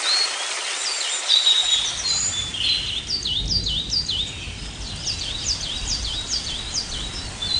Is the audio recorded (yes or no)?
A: yes